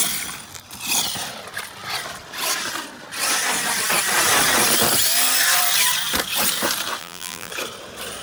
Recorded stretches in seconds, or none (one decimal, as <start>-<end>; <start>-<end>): 0.0-7.0; 7.5-8.2